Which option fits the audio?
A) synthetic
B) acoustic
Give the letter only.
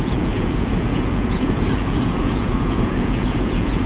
A